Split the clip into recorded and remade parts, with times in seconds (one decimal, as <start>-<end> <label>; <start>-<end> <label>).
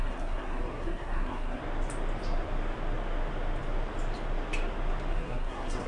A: 0.0-1.6 remade; 1.6-5.1 recorded; 5.1-5.9 remade